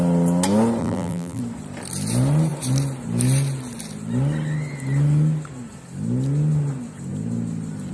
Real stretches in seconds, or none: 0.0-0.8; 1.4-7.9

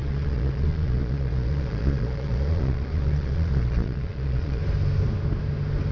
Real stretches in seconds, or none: 4.6-5.9

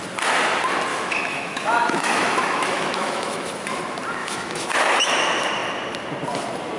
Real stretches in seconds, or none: 0.0-0.9; 3.5-4.2; 5.1-6.8

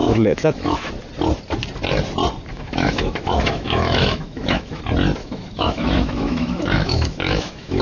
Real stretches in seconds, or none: 0.9-2.5; 4.8-5.2

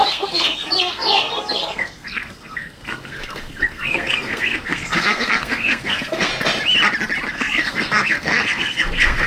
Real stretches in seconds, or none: 6.3-7.3